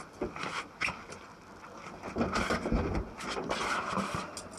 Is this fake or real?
real